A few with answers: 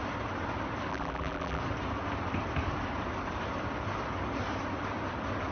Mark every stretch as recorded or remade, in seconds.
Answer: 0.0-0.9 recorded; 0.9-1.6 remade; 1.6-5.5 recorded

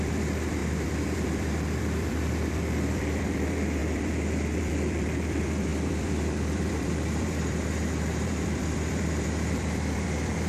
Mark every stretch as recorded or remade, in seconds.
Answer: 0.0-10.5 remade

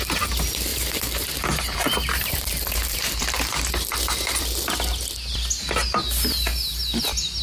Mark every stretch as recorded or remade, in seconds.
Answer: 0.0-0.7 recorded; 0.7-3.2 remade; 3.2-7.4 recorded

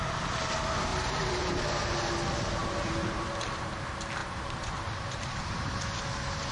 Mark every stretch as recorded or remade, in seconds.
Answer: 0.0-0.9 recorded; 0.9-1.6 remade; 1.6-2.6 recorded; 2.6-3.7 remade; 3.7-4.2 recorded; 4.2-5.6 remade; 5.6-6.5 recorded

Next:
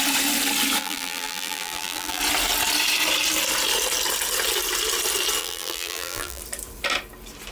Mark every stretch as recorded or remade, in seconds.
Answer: 0.0-0.8 recorded; 0.8-2.2 remade; 2.2-5.4 recorded; 5.4-6.4 remade; 6.4-7.5 recorded

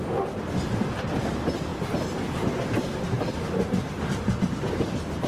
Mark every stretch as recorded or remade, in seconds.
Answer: 0.0-5.3 recorded

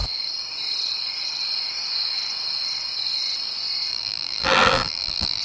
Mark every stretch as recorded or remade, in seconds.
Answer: 0.0-3.9 recorded; 3.9-5.4 remade